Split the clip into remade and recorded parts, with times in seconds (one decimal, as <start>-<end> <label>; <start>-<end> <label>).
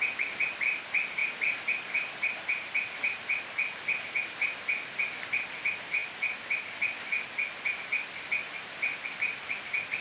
0.0-10.0 recorded